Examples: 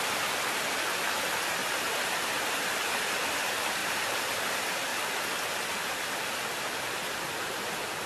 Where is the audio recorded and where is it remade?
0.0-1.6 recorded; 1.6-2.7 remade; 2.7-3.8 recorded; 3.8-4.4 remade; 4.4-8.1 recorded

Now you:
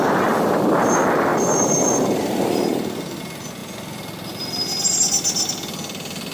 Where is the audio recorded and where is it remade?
0.0-1.3 recorded; 1.3-3.2 remade; 3.2-6.3 recorded

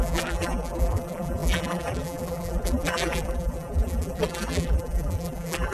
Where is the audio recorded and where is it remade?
0.0-5.7 remade

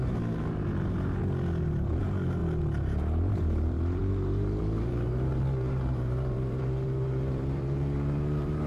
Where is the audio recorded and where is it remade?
0.0-1.2 remade; 1.2-2.0 recorded; 2.0-2.4 remade; 2.4-3.3 recorded; 3.3-8.7 remade

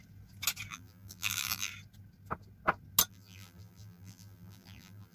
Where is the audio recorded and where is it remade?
0.0-0.7 recorded; 0.7-1.7 remade; 1.7-3.1 recorded; 3.1-5.1 remade

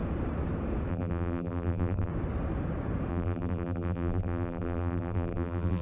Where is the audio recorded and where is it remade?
0.0-0.9 recorded; 0.9-2.1 remade; 2.1-3.1 recorded; 3.1-5.8 remade

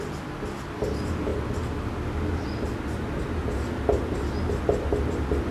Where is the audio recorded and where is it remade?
0.0-5.5 recorded

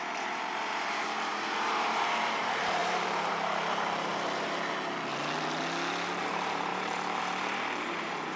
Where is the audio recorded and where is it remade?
0.0-4.1 remade; 4.1-6.3 recorded; 6.3-8.4 remade